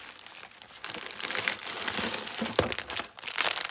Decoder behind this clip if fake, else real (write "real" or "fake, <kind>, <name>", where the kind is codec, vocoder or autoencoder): real